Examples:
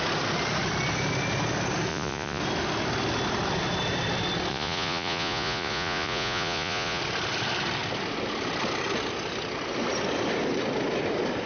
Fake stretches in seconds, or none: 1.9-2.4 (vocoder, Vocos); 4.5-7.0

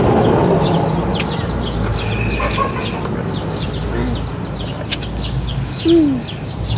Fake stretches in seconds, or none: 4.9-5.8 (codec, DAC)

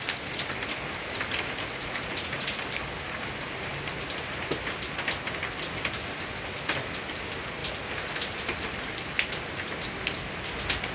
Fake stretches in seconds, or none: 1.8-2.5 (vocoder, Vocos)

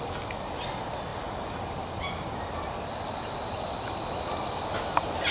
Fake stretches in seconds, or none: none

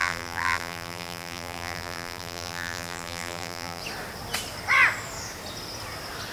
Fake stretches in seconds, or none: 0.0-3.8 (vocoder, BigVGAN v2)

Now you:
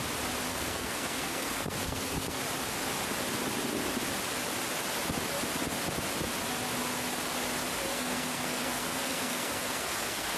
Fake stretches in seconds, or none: 0.5-2.4 (codec, SNAC); 7.9-10.4